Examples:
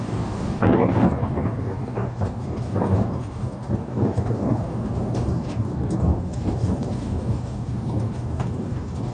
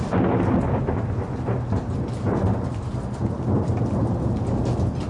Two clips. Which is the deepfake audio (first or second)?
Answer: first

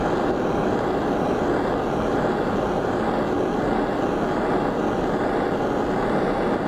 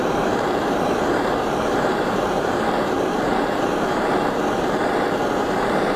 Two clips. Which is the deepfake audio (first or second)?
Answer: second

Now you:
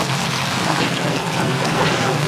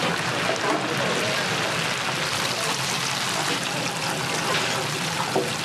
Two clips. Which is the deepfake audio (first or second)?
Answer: first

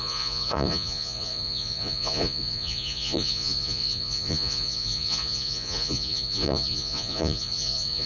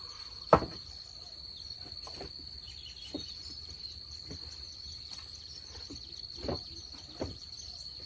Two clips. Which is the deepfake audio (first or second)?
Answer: first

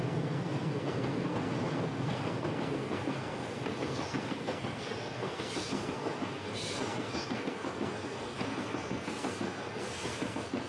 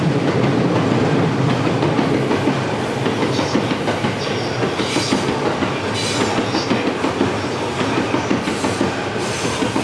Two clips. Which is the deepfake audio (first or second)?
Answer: first